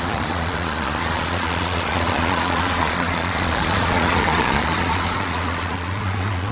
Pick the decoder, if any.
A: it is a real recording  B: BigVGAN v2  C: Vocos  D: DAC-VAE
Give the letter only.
C